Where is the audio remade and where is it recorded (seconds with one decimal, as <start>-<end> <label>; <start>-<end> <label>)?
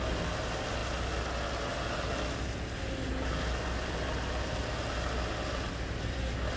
0.0-6.6 recorded